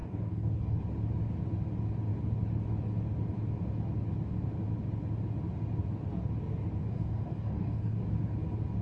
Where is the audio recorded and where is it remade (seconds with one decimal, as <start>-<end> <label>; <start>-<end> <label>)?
0.0-0.8 remade; 0.8-6.8 recorded; 6.8-8.2 remade; 8.2-8.8 recorded

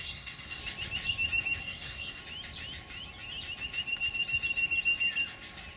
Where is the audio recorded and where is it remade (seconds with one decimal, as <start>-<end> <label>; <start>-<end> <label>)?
0.0-0.6 remade; 0.6-1.6 recorded; 1.6-2.2 remade; 2.2-5.8 recorded

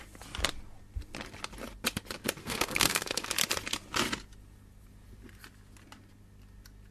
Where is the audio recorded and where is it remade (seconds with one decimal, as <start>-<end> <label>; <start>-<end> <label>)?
0.0-2.4 recorded; 2.4-3.3 remade; 3.3-6.9 recorded